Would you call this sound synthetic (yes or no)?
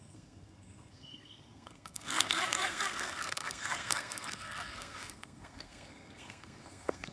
yes